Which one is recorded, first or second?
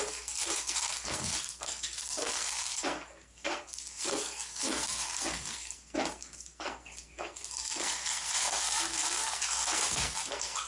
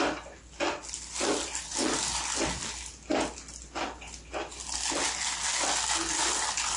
second